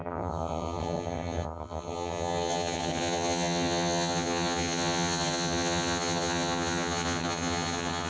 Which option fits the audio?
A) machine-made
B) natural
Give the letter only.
A